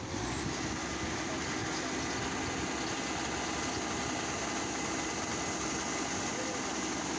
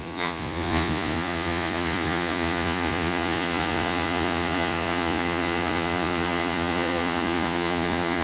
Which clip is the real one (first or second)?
first